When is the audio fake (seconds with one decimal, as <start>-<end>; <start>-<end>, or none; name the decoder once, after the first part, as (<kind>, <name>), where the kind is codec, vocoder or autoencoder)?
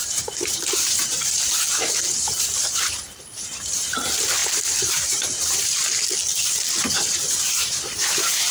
0.0-5.8 (vocoder, BigVGAN v2); 7.1-8.5